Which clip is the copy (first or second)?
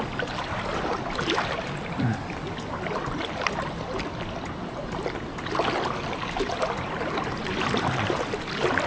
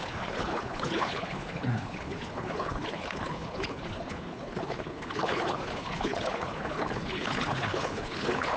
second